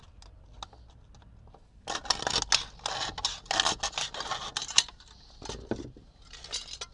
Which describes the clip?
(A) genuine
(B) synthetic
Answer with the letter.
A